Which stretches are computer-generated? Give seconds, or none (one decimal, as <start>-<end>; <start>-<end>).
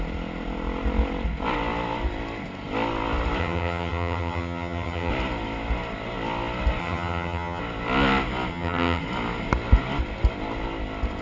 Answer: 3.4-5.1; 6.8-7.6; 8.5-9.0